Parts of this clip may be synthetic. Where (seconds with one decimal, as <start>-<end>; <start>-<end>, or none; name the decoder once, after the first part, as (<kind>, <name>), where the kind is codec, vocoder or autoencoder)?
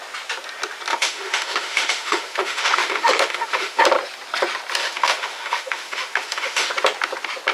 0.9-3.8 (autoencoder, DAC-VAE); 4.8-6.7